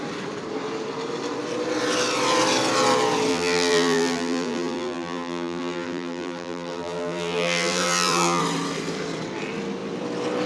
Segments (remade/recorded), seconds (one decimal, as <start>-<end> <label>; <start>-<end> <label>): 0.0-3.3 recorded; 3.3-8.4 remade; 8.4-10.5 recorded

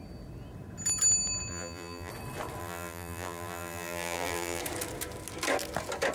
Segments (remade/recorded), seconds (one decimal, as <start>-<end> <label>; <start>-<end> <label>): 0.0-1.5 recorded; 1.5-2.1 remade; 2.1-2.6 recorded; 2.6-4.6 remade; 4.6-6.1 recorded